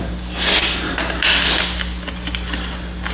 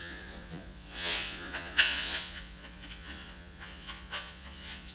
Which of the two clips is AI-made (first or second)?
second